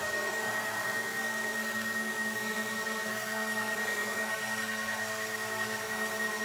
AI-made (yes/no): yes